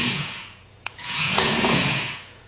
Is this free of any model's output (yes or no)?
no